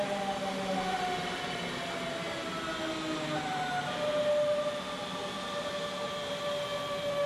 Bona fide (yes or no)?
yes